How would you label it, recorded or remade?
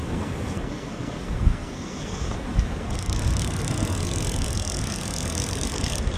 remade